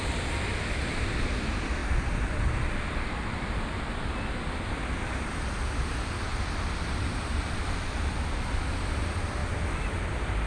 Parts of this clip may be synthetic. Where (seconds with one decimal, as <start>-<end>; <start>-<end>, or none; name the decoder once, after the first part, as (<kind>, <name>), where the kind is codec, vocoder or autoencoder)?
none